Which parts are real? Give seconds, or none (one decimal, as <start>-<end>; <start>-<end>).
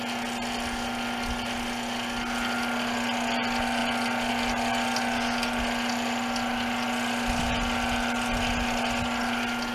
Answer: 0.0-9.7